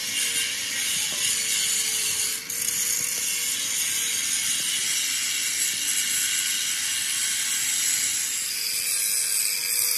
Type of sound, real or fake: real